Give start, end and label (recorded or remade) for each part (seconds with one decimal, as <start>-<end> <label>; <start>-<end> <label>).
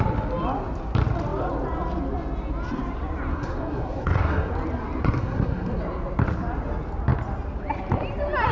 0.0-3.3 recorded; 3.3-4.5 remade; 4.5-5.0 recorded; 5.0-5.8 remade; 5.8-8.5 recorded